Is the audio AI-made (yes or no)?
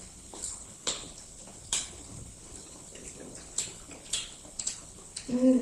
yes